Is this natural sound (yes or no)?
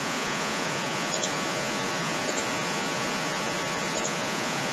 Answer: no